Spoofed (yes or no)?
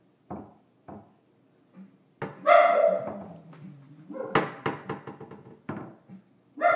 no